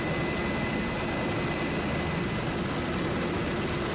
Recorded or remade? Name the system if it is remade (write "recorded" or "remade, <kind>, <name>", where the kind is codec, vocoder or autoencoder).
recorded